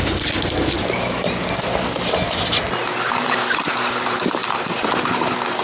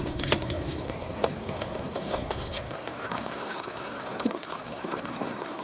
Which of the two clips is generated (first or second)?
second